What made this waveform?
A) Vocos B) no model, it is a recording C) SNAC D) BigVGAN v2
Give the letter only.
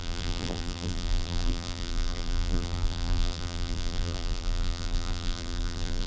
D